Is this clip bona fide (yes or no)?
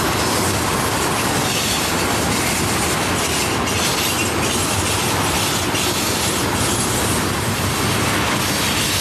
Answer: yes